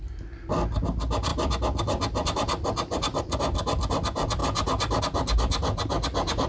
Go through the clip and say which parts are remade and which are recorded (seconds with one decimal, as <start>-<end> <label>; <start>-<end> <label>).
0.0-1.3 recorded; 1.3-3.2 remade; 3.2-4.4 recorded; 4.4-5.0 remade; 5.0-6.5 recorded